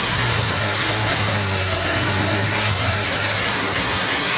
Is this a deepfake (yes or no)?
yes